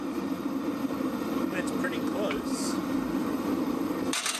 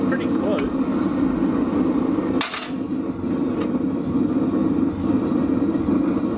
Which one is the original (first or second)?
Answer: second